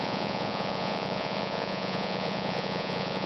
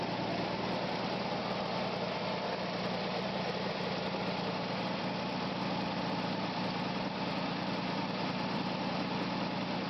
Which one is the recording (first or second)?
second